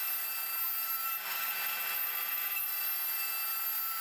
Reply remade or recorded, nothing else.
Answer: recorded